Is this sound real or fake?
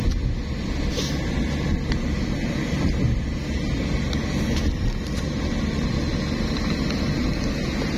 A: real